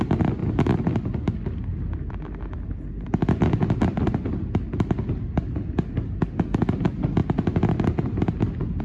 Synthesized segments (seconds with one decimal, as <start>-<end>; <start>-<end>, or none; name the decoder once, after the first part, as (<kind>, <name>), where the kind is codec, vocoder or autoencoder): none

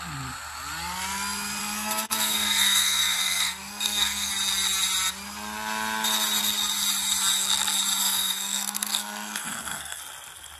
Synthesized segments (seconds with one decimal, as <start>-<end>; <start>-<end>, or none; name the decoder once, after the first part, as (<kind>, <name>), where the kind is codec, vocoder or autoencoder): 1.6-4.3 (codec, SNAC); 8.0-10.0

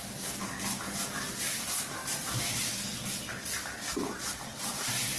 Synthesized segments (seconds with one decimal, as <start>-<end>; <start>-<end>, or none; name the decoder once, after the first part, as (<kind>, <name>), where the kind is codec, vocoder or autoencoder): 2.0-2.7 (vocoder, BigVGAN v2); 4.5-5.2